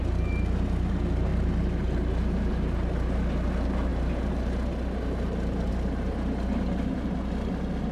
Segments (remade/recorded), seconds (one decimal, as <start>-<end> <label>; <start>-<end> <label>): 0.0-7.9 recorded